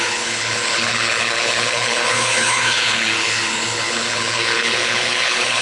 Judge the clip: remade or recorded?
remade